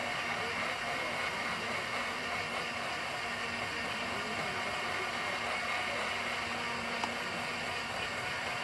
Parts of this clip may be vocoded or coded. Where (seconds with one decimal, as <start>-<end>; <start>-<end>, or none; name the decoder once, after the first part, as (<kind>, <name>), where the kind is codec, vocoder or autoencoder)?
none